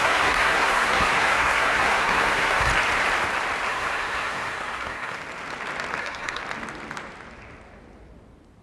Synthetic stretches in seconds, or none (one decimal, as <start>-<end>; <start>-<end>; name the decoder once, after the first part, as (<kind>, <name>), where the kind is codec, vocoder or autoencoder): 0.0-2.7 (codec, SNAC); 3.7-5.2; 6.0-6.4

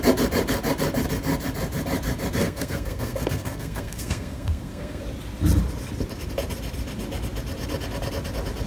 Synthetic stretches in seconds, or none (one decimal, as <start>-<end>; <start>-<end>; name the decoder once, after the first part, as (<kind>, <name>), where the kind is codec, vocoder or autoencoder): 2.4-5.0 (codec, SNAC)

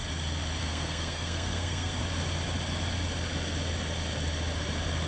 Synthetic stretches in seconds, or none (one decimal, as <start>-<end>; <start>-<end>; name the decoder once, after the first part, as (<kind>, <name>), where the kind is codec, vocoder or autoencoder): 0.6-2.0 (codec, SNAC)